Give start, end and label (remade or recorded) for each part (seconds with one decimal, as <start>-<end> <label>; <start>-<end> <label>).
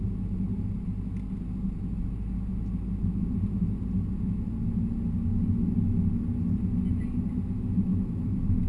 0.0-8.7 recorded